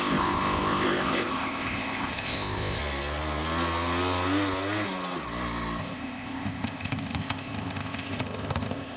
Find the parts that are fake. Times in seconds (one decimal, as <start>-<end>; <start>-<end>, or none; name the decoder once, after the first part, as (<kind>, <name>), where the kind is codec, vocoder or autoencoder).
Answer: 0.0-2.8 (codec, ZipCodec); 5.8-9.0